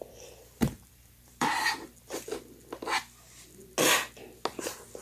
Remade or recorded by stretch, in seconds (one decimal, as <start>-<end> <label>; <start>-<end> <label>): 0.0-1.9 remade; 1.9-5.0 recorded